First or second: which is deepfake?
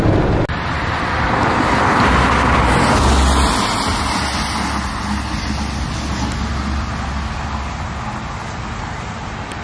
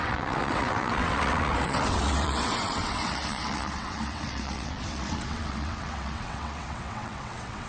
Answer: second